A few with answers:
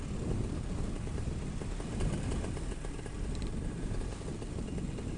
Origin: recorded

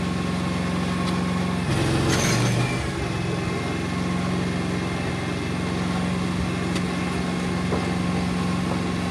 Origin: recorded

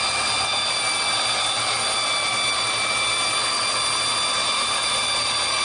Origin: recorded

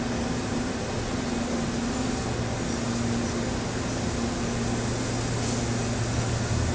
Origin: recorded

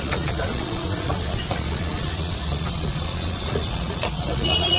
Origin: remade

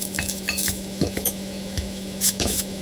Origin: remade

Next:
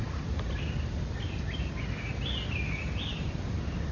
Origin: recorded